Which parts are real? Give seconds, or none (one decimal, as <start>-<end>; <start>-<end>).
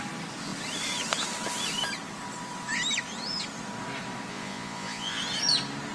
0.0-4.3; 5.2-5.9